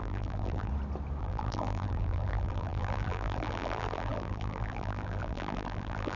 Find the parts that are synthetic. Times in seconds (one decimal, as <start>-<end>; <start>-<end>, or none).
0.0-0.7; 1.2-6.2